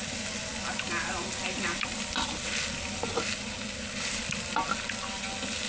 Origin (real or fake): real